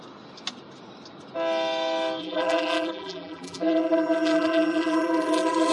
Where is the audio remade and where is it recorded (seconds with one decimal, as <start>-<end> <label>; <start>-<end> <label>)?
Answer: 0.0-2.2 recorded; 2.2-5.7 remade